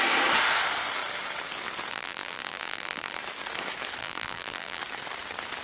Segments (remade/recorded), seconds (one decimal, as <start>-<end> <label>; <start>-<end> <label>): 0.0-1.9 recorded; 1.9-3.2 remade; 3.2-4.0 recorded; 4.0-4.8 remade; 4.8-5.6 recorded